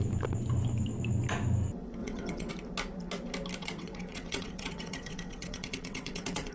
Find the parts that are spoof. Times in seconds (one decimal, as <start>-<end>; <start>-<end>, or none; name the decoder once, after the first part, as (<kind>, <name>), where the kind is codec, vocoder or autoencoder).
2.0-2.5 (vocoder, WaveNeXt); 3.6-6.5